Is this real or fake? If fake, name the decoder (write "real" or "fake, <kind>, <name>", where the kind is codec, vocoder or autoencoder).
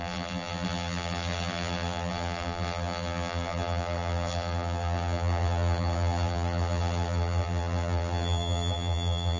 fake, vocoder, BigVGAN v2